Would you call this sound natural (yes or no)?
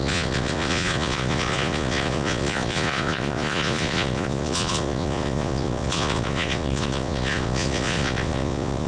no